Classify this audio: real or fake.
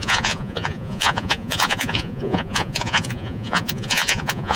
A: fake